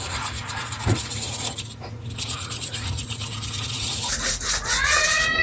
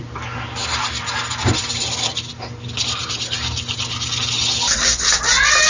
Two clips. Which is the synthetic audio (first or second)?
first